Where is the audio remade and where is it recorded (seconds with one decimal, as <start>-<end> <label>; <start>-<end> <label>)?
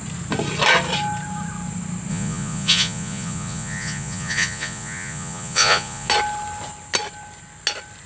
0.0-2.1 recorded; 2.1-6.1 remade; 6.1-8.1 recorded